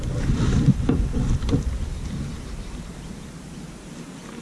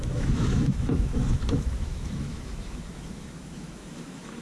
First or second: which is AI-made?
second